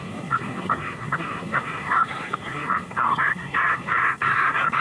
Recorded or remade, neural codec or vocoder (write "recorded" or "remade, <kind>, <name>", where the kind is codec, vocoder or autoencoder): remade, codec, SNAC